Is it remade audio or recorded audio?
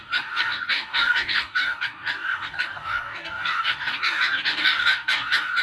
remade